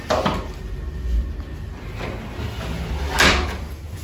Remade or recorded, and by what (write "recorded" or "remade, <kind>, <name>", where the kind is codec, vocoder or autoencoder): recorded